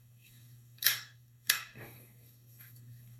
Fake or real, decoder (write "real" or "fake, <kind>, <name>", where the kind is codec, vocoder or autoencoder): fake, codec, DAC